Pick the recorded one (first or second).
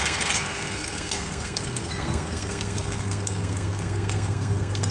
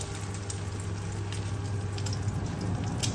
second